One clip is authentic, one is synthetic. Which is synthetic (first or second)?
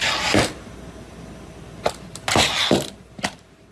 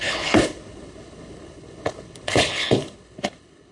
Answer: second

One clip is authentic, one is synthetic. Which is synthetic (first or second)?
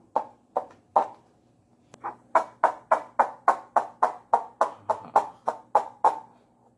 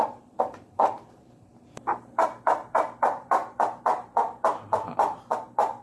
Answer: second